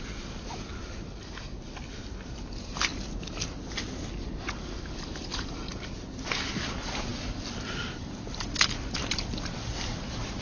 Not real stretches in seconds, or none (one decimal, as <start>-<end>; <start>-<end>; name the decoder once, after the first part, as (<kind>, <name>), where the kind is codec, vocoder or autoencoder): none